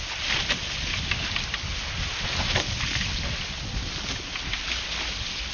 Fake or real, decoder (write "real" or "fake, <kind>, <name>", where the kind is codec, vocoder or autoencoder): real